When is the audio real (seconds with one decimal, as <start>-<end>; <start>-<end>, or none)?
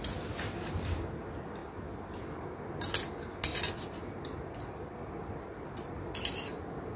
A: 0.0-1.6; 2.2-7.0